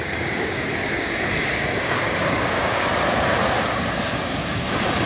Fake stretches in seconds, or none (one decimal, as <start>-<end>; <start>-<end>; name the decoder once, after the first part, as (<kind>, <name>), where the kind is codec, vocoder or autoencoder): 0.0-2.9 (codec, DAC); 3.6-5.1